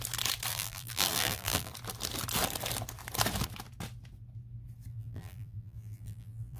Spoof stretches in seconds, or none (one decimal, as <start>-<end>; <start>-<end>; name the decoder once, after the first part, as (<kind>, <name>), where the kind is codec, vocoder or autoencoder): 0.5-1.7 (vocoder, BigVGAN v2); 4.9-6.6